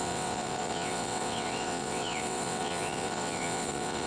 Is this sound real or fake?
fake